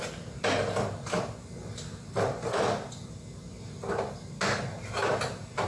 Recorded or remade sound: recorded